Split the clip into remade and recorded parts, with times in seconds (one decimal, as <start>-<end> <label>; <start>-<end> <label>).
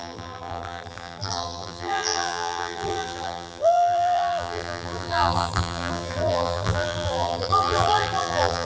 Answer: 0.0-8.6 remade